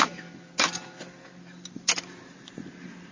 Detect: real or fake real